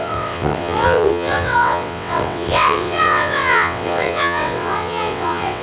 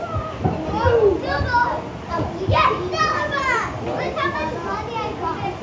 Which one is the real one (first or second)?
second